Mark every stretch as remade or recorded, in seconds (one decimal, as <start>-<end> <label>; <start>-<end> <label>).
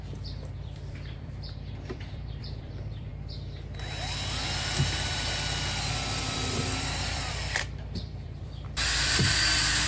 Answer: 0.0-3.1 remade; 3.1-6.2 recorded; 6.2-9.9 remade